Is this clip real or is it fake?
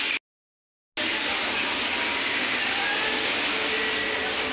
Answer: real